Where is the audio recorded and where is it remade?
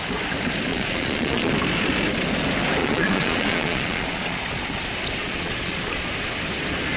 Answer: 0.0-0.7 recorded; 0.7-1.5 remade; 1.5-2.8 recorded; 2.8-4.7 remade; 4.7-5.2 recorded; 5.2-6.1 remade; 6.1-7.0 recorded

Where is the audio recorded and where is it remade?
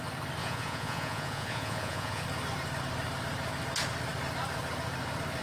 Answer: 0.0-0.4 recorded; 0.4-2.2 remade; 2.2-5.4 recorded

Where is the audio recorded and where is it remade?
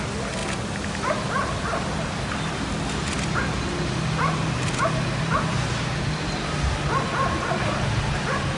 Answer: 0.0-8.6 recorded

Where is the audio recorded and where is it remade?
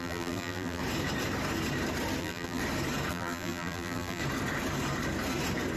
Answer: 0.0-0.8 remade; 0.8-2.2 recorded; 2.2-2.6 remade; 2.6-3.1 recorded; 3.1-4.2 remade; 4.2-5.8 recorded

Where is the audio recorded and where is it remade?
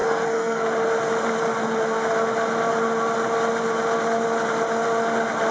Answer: 0.0-0.6 remade; 0.6-5.5 recorded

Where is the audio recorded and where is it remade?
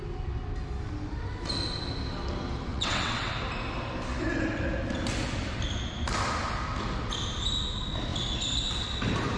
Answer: 0.0-2.7 recorded; 2.7-3.3 remade; 3.3-9.4 recorded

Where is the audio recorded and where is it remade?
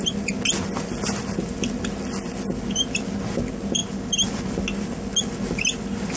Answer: 0.0-3.8 recorded; 3.8-4.6 remade; 4.6-6.2 recorded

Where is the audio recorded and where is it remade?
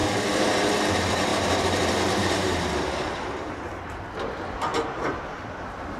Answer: 0.0-0.9 remade; 0.9-1.3 recorded; 1.3-4.1 remade; 4.1-6.0 recorded